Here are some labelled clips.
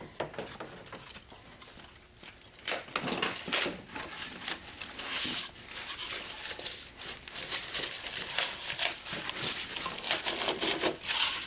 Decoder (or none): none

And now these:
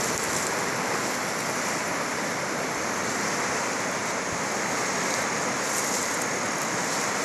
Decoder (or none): none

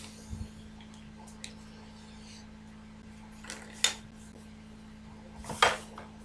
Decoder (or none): none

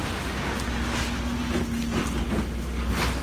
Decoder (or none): none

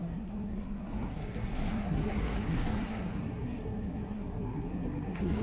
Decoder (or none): codec, SNAC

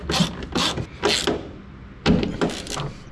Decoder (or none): none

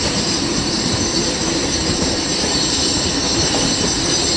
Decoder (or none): vocoder, BigVGAN v2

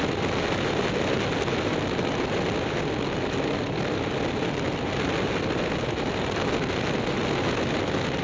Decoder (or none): none